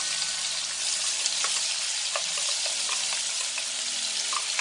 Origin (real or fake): real